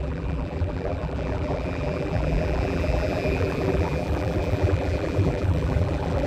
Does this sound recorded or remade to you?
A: remade